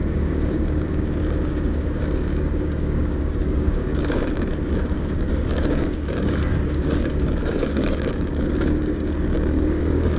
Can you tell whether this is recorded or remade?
remade